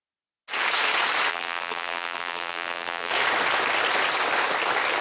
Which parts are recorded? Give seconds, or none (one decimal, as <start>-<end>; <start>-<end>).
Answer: 0.0-1.3; 3.1-5.0